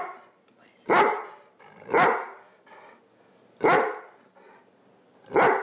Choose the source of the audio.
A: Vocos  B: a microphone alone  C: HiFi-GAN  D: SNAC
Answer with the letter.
B